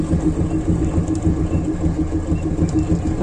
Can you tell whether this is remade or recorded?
recorded